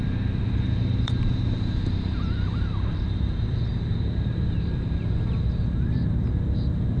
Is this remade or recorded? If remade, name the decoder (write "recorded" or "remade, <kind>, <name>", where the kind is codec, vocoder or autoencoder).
remade, vocoder, BigVGAN v2